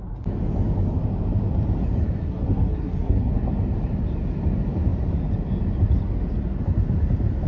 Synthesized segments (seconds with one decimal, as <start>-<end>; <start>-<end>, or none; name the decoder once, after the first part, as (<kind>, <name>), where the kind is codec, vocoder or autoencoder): 2.2-3.3 (codec, SNAC)